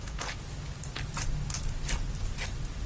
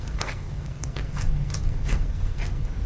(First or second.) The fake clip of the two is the second